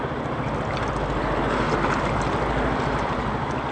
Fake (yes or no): no